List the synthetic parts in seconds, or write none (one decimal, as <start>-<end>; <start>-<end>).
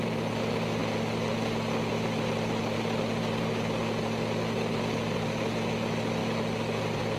none